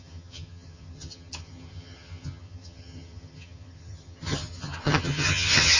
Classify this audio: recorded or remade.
remade